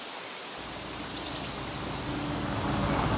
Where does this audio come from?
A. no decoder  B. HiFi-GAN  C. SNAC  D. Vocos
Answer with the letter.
A